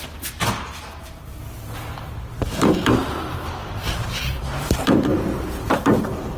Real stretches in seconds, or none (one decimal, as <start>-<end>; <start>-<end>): 1.4-2.4; 5.1-5.7